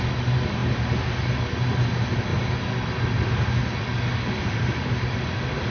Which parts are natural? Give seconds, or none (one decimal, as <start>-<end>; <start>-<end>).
0.0-5.7